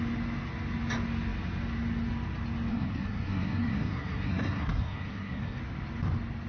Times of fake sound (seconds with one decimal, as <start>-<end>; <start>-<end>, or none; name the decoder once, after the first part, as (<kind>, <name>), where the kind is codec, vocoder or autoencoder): 2.7-5.6 (codec, SNAC)